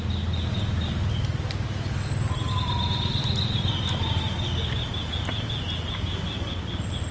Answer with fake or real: real